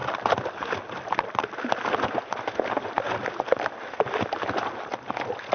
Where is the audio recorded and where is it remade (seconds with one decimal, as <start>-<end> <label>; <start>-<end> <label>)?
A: 0.0-5.5 recorded